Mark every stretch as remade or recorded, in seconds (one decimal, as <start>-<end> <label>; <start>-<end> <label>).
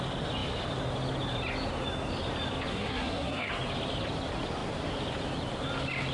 0.0-2.7 recorded; 2.7-3.5 remade; 3.5-6.1 recorded